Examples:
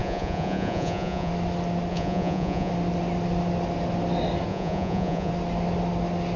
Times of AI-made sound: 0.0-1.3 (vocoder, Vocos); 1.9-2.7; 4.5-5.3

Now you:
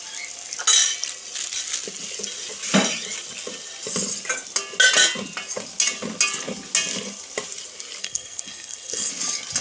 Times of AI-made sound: 8.0-9.1 (codec, SNAC)

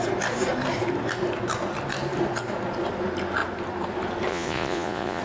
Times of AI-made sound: 4.3-5.2 (vocoder, Vocos)

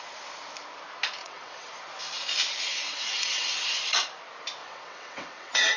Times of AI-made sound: 1.2-1.7 (vocoder, WaveNeXt); 2.7-3.5; 4.6-5.8

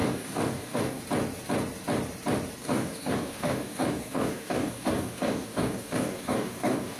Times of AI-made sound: 0.0-1.0 (codec, DAC); 2.6-7.0